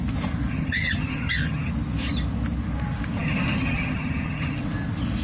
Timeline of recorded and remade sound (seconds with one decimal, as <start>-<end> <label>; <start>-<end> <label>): 0.0-0.5 recorded; 0.5-1.7 remade; 1.7-3.2 recorded; 3.2-4.6 remade; 4.6-5.2 recorded